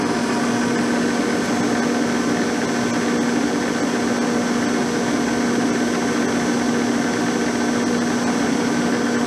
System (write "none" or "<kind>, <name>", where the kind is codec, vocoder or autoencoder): none